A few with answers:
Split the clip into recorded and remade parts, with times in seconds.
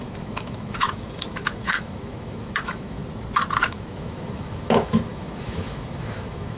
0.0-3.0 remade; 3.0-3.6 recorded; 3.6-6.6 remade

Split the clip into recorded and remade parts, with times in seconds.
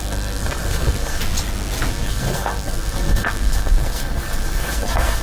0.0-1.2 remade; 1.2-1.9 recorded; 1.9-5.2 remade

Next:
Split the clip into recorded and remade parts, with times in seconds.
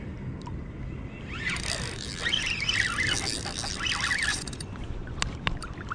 0.0-4.3 recorded; 4.3-5.2 remade; 5.2-5.9 recorded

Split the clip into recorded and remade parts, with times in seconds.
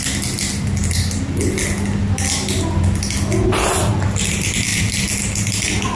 0.0-6.0 recorded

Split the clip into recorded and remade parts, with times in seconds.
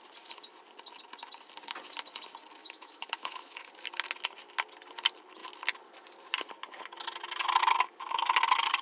0.0-2.6 recorded; 2.6-3.7 remade; 3.7-8.8 recorded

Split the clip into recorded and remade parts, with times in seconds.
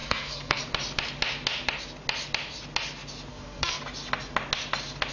0.0-0.6 remade; 0.6-3.3 recorded; 3.3-3.8 remade; 3.8-5.1 recorded